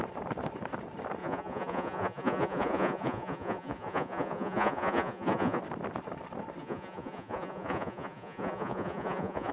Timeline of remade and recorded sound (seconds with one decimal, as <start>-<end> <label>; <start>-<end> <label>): 0.0-1.2 recorded; 1.2-5.6 remade; 5.6-6.6 recorded; 6.6-9.5 remade